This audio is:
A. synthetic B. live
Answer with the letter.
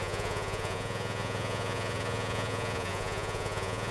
A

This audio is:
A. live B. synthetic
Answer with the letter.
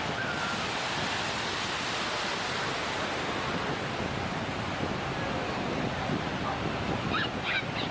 A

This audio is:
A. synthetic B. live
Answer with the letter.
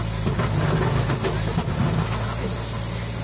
B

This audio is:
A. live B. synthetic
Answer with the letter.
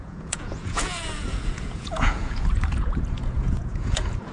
B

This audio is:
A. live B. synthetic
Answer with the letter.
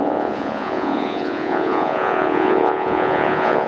B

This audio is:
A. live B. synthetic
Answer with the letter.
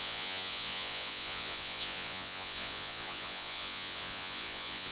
B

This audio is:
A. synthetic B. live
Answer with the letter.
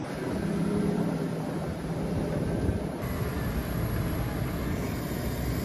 B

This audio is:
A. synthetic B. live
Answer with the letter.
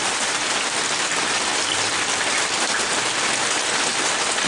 B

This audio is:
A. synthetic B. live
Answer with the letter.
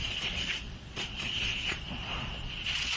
A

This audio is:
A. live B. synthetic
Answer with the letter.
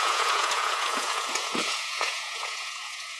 B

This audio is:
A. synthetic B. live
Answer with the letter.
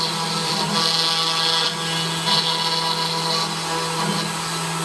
B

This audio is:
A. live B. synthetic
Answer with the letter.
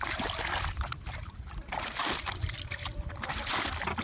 A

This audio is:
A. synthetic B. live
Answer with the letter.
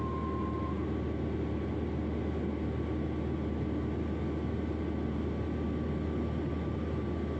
B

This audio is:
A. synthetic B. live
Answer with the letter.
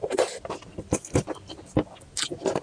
B